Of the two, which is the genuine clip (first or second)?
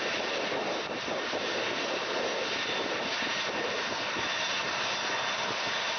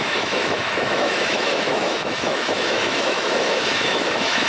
first